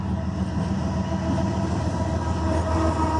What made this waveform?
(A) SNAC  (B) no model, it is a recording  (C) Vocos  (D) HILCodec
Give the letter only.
B